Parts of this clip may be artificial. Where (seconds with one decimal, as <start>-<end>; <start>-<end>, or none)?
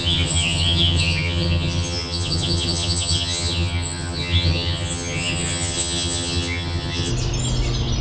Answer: 0.0-7.1